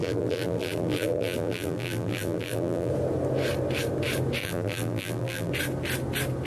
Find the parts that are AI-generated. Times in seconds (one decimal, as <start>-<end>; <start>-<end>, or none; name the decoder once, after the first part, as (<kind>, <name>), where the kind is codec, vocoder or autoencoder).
0.0-2.9 (vocoder, BigVGAN v2); 4.4-5.5